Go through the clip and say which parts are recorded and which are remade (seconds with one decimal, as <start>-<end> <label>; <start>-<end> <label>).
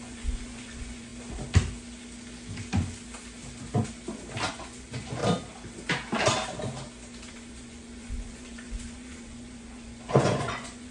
0.0-1.1 remade; 1.1-4.5 recorded; 4.5-5.2 remade; 5.2-7.3 recorded; 7.3-10.9 remade